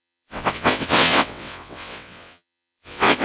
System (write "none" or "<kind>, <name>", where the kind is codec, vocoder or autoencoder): vocoder, WaveNeXt